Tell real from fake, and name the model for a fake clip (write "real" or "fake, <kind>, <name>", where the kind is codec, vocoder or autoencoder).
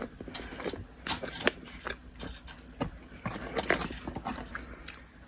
real